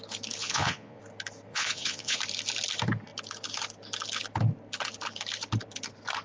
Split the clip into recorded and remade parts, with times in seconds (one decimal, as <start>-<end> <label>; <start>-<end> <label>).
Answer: 0.0-0.4 recorded; 0.4-1.0 remade; 1.0-1.5 recorded; 1.5-2.2 remade; 2.2-6.2 recorded